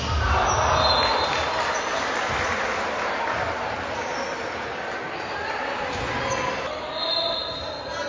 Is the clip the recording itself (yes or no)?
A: yes